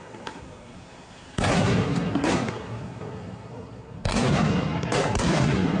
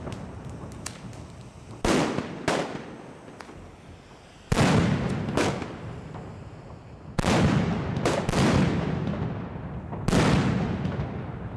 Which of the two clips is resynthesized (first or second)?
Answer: first